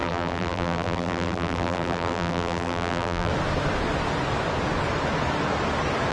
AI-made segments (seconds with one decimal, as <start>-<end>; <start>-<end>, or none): 0.0-3.3